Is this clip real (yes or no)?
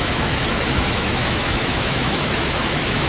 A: no